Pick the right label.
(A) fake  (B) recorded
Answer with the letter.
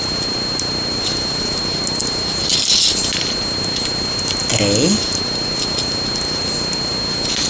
B